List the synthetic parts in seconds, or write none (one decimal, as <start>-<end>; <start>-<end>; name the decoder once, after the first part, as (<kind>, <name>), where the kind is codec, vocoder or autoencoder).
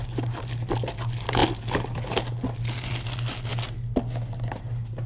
none